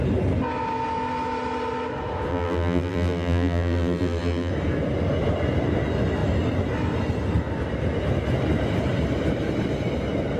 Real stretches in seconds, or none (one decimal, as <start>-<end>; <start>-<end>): 0.0-2.3; 4.5-10.4